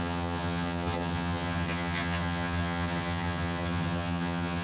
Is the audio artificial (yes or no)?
yes